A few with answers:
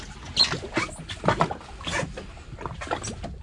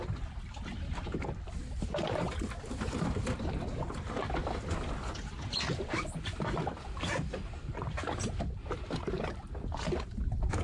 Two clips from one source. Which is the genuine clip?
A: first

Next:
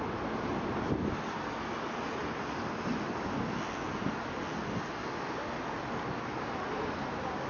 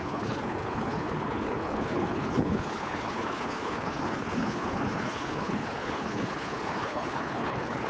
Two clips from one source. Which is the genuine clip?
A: first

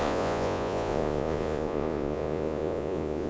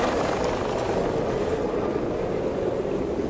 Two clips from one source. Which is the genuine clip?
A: second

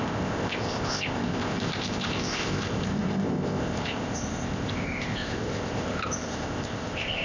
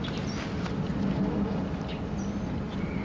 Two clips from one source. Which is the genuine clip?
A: second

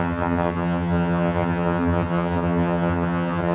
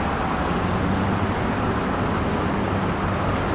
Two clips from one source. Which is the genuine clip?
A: second